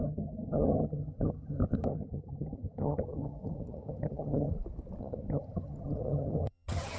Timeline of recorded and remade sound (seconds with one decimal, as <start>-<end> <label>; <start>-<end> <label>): 0.0-4.5 remade; 4.5-5.0 recorded; 5.0-7.0 remade